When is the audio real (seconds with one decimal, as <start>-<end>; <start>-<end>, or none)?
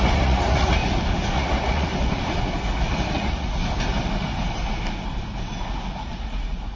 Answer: 0.8-1.3; 1.9-3.1; 3.6-6.0